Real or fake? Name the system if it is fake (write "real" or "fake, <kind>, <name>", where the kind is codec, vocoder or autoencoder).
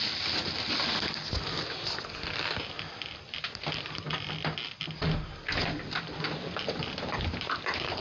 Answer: real